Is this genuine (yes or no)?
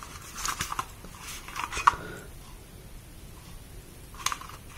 yes